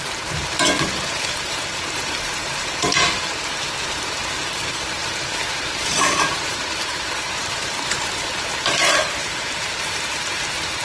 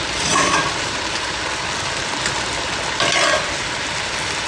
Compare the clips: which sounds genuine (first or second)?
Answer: second